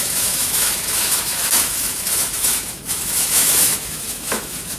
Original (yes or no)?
no